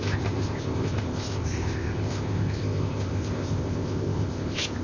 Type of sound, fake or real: fake